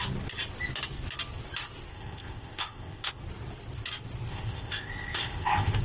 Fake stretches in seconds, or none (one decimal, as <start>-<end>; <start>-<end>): 1.9-3.2; 4.3-5.8